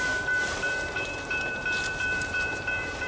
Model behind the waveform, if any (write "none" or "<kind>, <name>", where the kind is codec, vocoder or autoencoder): vocoder, BigVGAN v2